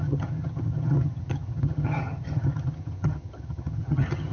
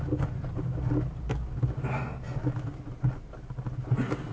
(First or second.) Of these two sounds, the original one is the second